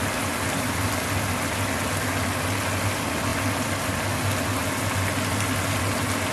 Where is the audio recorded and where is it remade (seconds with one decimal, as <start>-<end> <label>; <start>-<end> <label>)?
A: 0.0-6.3 recorded

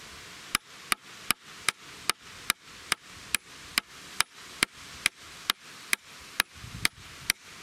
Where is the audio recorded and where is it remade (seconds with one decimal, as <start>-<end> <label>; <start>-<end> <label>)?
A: 0.0-3.7 recorded; 3.7-7.0 remade; 7.0-7.6 recorded